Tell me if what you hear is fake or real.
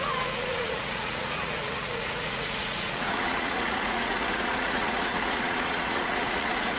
fake